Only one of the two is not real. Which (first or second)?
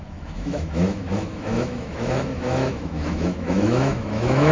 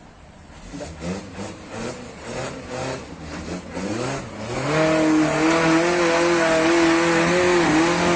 first